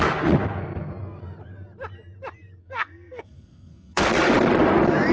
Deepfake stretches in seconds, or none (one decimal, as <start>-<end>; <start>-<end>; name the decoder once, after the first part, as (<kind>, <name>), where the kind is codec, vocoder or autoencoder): 2.6-4.1 (codec, SNAC)

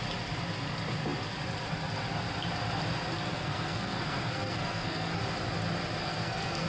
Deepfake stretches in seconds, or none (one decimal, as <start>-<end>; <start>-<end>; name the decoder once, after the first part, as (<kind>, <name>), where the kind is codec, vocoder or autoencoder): 3.3-5.2 (codec, SNAC); 6.0-6.7